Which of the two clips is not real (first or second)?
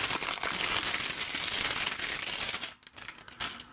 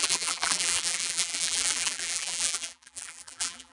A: second